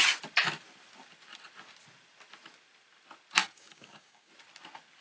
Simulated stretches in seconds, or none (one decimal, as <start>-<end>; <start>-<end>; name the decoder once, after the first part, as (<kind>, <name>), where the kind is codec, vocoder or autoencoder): 3.4-4.3 (codec, DAC)